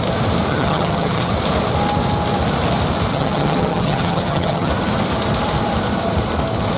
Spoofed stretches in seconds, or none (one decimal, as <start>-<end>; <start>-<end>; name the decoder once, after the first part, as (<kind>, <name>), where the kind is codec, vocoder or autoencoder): 0.5-1.3 (vocoder, HiFi-GAN); 3.1-4.7